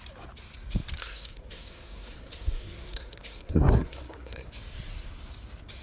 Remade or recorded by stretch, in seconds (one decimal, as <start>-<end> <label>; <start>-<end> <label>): 0.0-1.0 recorded; 1.0-4.5 remade; 4.5-5.8 recorded